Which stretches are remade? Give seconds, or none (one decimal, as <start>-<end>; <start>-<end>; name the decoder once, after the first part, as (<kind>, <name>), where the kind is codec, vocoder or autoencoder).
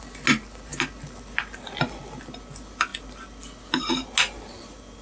none